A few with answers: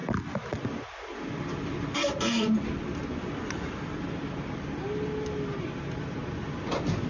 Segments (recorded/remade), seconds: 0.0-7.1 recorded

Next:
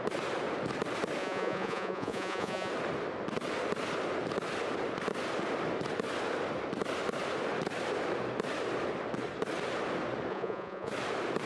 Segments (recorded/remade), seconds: 0.0-1.2 recorded; 1.2-2.7 remade; 2.7-10.3 recorded; 10.3-10.9 remade; 10.9-11.5 recorded

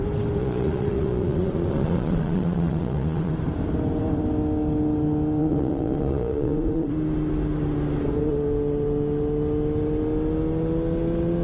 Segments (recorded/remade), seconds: 0.0-0.4 recorded; 0.4-3.3 remade; 3.3-5.4 recorded; 5.4-6.9 remade; 6.9-11.4 recorded

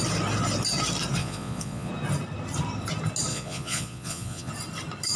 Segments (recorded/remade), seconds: 0.0-1.2 recorded; 1.2-1.9 remade; 1.9-3.3 recorded; 3.3-4.5 remade; 4.5-5.2 recorded

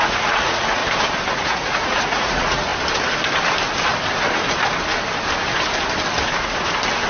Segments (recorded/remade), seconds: 0.0-0.8 remade; 0.8-1.3 recorded; 1.3-2.7 remade; 2.7-7.1 recorded